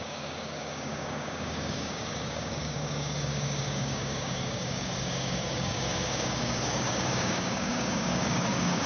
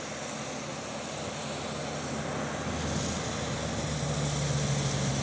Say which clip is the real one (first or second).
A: second